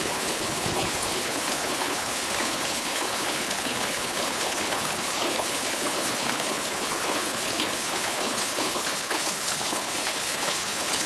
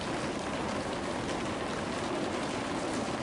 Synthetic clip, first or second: first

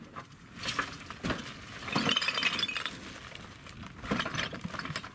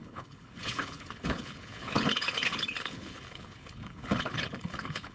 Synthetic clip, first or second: second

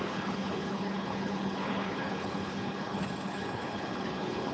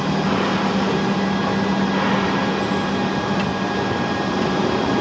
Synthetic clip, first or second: first